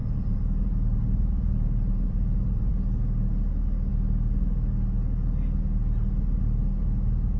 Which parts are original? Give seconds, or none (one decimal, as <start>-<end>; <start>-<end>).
2.7-7.4